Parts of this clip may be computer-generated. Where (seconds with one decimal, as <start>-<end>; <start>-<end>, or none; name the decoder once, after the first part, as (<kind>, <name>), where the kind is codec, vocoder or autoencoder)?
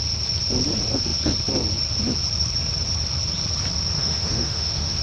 4.0-5.0 (autoencoder, DAC-VAE)